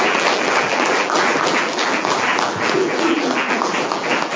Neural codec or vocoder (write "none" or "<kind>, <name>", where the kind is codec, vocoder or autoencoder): vocoder, BigVGAN v2